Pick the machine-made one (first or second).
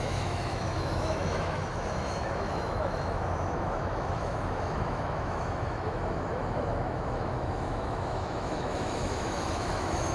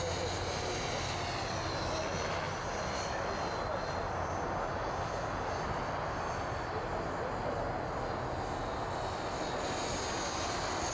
first